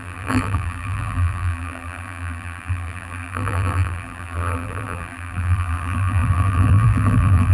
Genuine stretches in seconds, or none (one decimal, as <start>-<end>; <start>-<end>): none